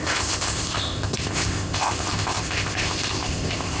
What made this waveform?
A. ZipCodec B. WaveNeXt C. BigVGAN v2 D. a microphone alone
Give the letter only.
A